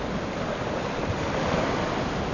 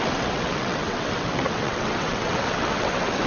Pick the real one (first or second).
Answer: first